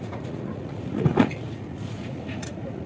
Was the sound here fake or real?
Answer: fake